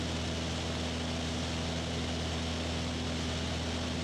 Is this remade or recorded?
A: recorded